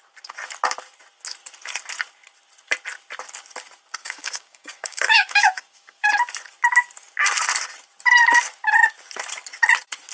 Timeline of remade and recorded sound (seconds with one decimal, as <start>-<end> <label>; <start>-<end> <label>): 0.0-4.0 recorded; 4.0-6.1 remade; 6.1-10.1 recorded